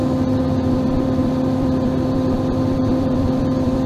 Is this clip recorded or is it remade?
remade